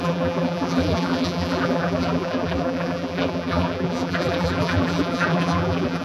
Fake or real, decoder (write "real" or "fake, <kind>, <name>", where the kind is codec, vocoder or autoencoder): fake, vocoder, BigVGAN v2